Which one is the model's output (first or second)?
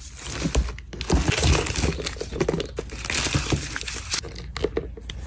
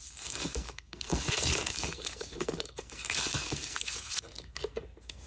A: second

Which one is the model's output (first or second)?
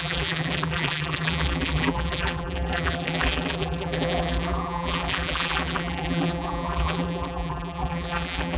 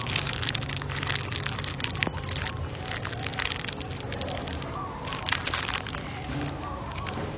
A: first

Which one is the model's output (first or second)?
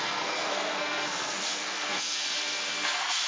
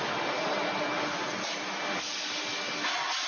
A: first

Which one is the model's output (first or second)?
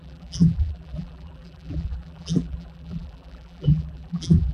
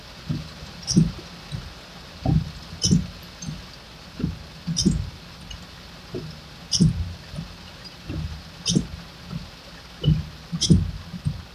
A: first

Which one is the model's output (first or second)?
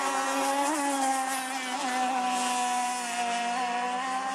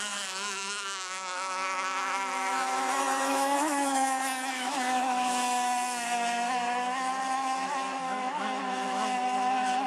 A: second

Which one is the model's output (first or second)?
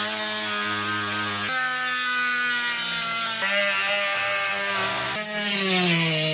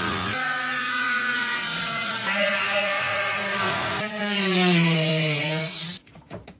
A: second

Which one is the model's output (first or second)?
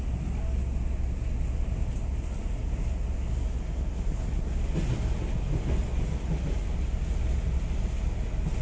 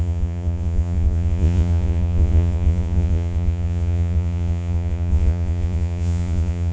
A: second